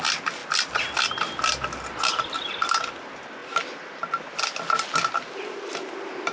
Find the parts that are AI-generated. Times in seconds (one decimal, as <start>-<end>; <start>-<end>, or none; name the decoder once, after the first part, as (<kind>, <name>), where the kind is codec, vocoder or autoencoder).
none